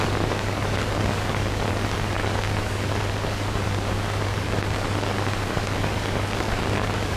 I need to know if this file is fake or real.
fake